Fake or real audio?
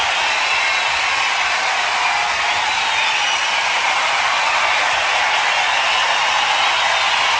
real